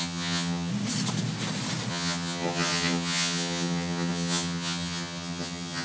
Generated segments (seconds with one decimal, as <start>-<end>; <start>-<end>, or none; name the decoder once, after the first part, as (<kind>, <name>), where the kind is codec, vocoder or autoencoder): 0.0-0.7 (vocoder, HiFi-GAN); 1.9-5.8